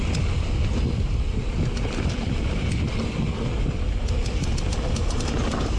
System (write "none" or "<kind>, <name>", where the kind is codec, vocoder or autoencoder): none